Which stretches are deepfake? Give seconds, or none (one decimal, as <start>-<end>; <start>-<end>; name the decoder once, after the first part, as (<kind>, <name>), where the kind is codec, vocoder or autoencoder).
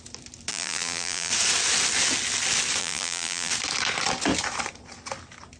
0.5-1.3 (vocoder, BigVGAN v2); 2.8-3.5